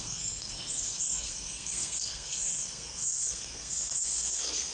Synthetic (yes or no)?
yes